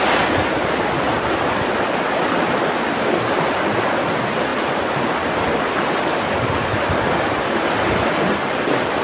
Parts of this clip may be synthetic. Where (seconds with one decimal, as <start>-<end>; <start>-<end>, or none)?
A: none